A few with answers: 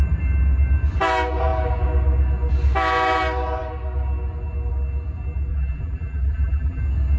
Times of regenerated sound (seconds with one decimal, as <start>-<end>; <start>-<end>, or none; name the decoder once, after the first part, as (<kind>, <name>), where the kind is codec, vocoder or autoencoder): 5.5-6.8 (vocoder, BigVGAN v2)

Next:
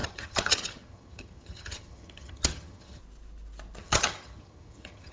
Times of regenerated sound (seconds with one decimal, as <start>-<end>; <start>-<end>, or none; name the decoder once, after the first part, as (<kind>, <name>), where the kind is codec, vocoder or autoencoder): 0.0-3.0 (vocoder, HiFi-GAN); 3.8-5.1

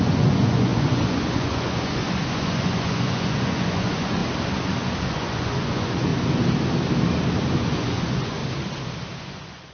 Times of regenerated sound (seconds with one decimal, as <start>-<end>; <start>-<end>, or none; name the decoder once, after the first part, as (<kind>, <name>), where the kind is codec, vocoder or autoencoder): 0.0-4.2 (vocoder, Vocos); 5.1-6.1; 7.5-8.4; 9.2-9.7

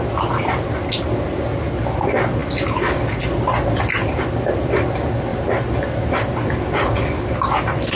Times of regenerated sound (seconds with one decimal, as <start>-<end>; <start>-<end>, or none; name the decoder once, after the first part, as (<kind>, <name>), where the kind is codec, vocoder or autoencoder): none